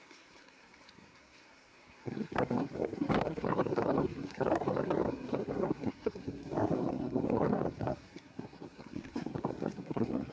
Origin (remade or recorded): remade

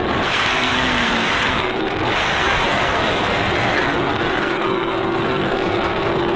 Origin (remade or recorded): remade